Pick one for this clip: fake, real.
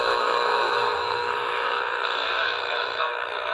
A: fake